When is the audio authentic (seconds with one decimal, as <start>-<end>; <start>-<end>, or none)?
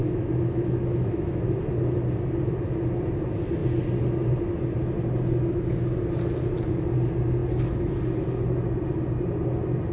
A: 1.4-9.9